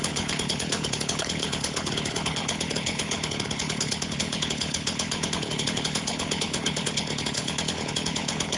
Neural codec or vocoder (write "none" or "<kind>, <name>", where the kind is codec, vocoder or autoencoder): codec, HILCodec